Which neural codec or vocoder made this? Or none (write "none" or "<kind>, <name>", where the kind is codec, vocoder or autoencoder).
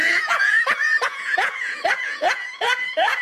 vocoder, Vocos